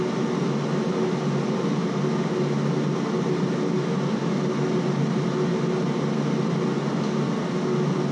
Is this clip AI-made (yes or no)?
no